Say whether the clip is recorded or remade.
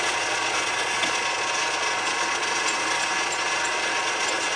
remade